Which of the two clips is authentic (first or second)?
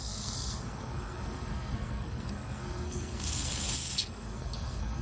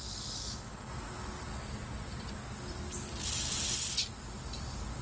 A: second